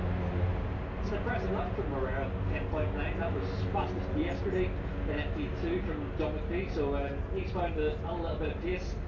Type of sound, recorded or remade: recorded